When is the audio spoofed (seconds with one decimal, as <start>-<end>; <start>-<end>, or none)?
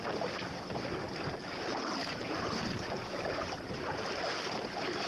2.0-5.1